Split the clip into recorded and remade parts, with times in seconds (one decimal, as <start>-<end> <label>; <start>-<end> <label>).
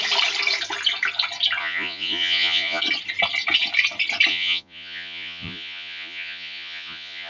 0.0-1.6 recorded; 1.6-2.8 remade; 2.8-4.3 recorded; 4.3-7.3 remade